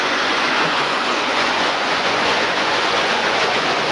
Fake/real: fake